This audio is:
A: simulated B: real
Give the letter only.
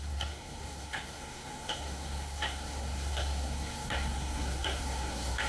A